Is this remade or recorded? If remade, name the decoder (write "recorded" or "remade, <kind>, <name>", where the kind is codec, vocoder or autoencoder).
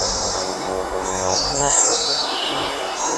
remade, codec, SNAC